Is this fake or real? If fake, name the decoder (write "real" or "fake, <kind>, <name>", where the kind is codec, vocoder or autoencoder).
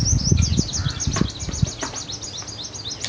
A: real